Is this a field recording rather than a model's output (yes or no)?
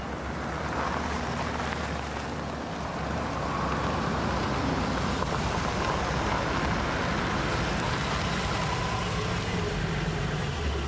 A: yes